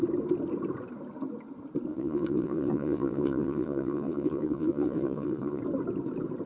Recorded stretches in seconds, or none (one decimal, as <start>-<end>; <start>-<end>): 0.0-1.9; 5.6-6.5